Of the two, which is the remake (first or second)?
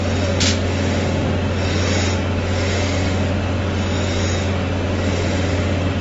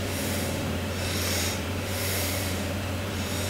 second